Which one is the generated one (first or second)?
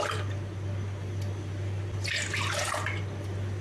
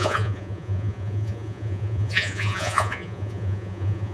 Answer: second